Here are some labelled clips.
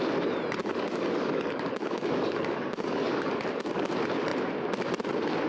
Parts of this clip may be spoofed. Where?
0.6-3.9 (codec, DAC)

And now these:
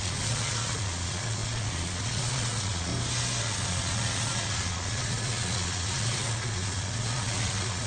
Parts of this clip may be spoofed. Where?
0.0-2.9 (vocoder, Vocos); 3.4-7.9

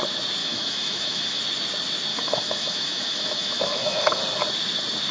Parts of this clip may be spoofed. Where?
0.4-1.4 (autoencoder, DAC-VAE); 2.1-4.2

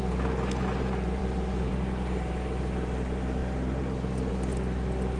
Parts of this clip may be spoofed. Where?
none

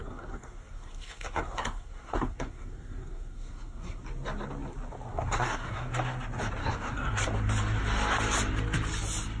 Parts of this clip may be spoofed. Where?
0.0-4.0 (codec, SNAC); 5.1-5.9; 6.6-7.2

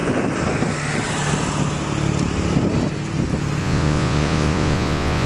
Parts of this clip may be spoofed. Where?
3.6-5.3 (vocoder, Vocos)

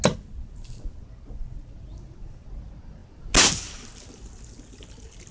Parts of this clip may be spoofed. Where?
none

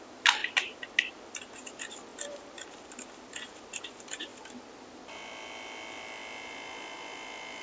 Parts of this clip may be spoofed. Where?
none